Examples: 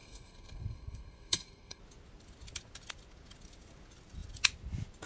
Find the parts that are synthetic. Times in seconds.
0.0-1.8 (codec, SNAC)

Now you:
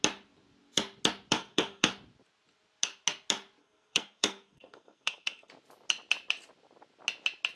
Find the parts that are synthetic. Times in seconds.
1.3-1.9 (codec, SNAC); 3.6-5.5